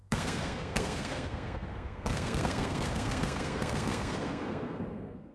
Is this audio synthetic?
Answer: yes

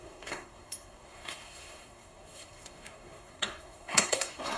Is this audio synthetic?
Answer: yes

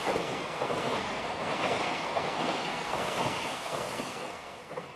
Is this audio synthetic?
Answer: yes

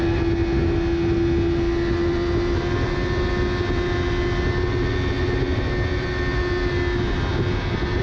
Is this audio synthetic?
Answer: no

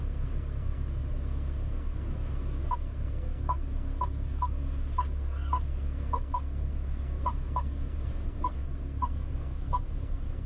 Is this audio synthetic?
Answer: yes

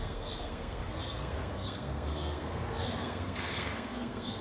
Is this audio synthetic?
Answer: yes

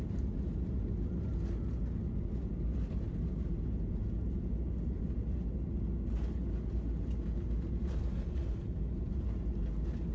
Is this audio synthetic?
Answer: no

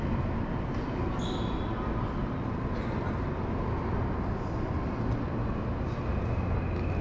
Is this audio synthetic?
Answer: no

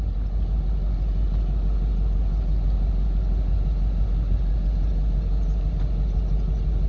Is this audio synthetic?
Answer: no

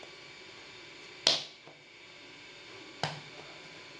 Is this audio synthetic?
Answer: no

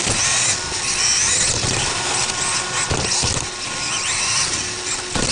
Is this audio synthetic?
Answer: no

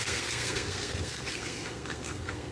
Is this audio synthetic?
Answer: yes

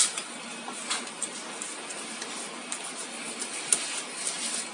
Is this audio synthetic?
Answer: no